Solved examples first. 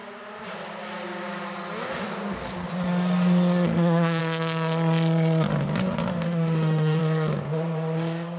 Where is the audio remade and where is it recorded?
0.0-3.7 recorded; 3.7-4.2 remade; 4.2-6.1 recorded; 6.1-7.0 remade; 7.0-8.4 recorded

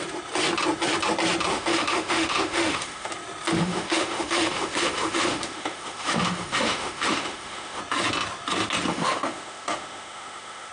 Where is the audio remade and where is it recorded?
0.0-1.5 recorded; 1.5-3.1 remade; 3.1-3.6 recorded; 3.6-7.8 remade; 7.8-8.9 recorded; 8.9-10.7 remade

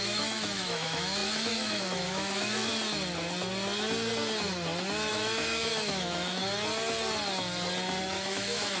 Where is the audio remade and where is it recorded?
0.0-2.7 remade; 2.7-5.1 recorded; 5.1-6.4 remade; 6.4-8.0 recorded; 8.0-8.8 remade

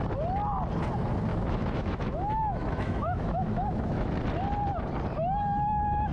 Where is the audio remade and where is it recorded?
0.0-1.3 recorded; 1.3-4.2 remade; 4.2-6.1 recorded

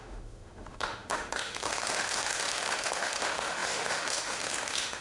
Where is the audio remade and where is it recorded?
0.0-5.0 remade

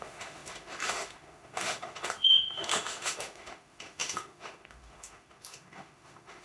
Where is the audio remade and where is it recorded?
0.0-6.4 remade

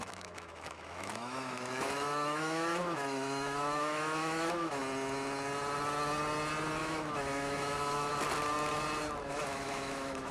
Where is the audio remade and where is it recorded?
0.0-4.8 remade; 4.8-6.8 recorded; 6.8-8.1 remade; 8.1-9.2 recorded; 9.2-10.3 remade